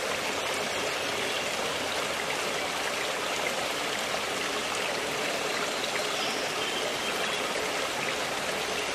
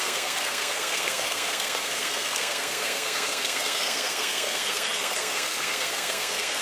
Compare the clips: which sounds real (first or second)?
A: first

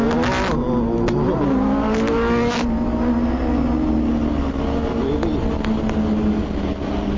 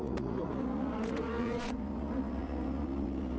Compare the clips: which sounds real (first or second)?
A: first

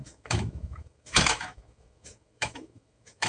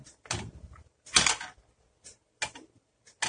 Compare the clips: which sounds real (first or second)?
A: second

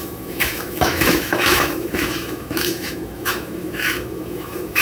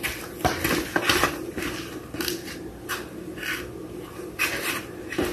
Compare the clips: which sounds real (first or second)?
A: second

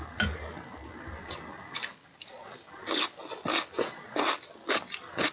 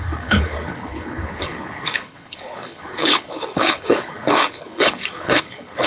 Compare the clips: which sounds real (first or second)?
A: first